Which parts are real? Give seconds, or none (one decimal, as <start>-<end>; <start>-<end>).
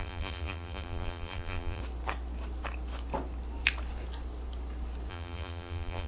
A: 1.8-5.1